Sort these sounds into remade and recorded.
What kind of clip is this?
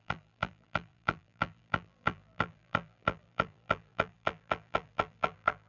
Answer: remade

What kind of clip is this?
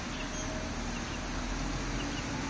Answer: recorded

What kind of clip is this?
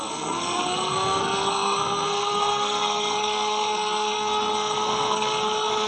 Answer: remade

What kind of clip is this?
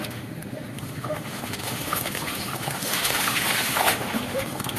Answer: remade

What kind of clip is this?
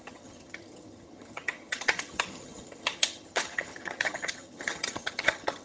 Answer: remade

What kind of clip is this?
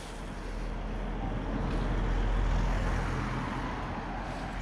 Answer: recorded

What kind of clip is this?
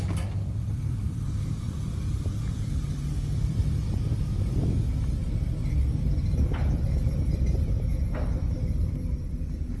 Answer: remade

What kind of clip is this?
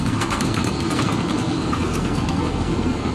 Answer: remade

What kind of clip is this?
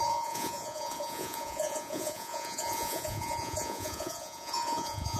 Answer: remade